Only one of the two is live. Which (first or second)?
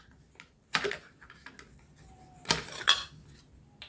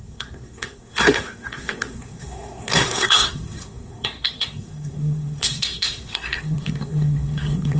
first